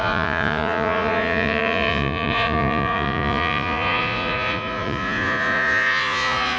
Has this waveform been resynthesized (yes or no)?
yes